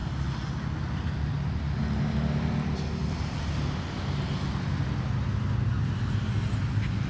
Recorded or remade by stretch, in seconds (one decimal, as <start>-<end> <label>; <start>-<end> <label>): 0.0-7.1 recorded